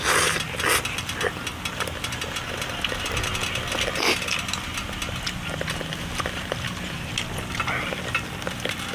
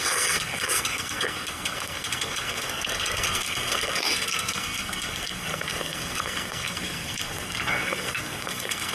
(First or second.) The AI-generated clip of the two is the second